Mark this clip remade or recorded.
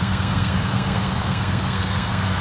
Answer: remade